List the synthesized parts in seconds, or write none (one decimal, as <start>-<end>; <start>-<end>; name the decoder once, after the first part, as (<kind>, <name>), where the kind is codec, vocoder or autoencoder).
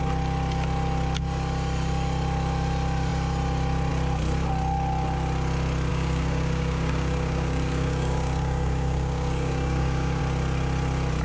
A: 5.9-10.2 (codec, DAC)